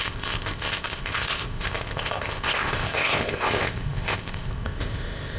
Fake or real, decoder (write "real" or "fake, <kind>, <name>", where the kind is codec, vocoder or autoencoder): fake, codec, ZipCodec